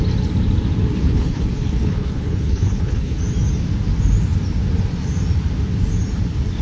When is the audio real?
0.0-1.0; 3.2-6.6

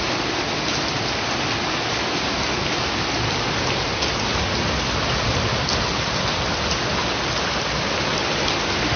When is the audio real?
0.0-9.0